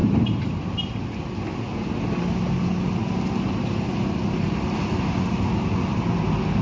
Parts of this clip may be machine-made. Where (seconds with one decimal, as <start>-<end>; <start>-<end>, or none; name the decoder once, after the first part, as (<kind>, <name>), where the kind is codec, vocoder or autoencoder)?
0.0-0.5 (vocoder, BigVGAN v2)